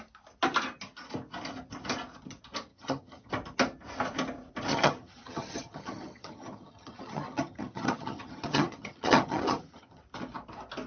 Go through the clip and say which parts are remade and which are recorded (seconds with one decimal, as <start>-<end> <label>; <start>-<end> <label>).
0.0-2.7 recorded; 2.7-3.3 remade; 3.3-4.7 recorded; 4.7-10.0 remade; 10.0-10.9 recorded